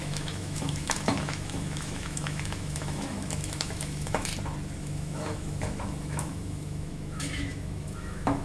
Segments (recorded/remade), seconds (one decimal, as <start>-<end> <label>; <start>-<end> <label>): 0.0-4.3 remade; 4.3-4.8 recorded; 4.8-8.4 remade